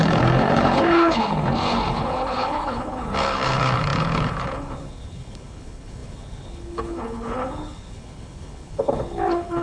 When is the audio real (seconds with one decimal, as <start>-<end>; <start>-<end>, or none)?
none